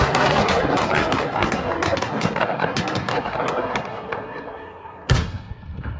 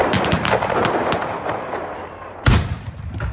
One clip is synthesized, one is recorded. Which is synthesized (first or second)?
first